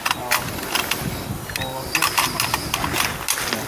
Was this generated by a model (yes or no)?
no